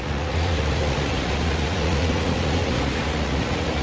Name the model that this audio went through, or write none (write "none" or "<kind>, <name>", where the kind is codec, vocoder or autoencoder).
vocoder, Vocos